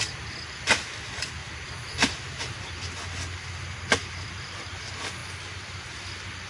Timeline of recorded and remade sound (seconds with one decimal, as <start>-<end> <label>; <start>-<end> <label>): 0.0-1.4 recorded; 1.4-1.9 remade; 1.9-4.0 recorded; 4.0-4.6 remade; 4.6-5.2 recorded; 5.2-5.9 remade; 5.9-6.5 recorded